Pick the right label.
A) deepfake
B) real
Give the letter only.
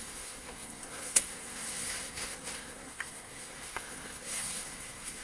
A